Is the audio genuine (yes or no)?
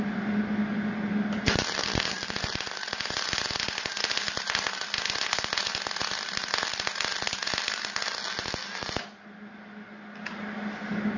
yes